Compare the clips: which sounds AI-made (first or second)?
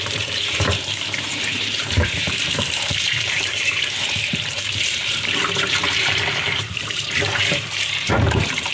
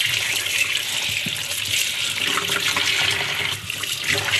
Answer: first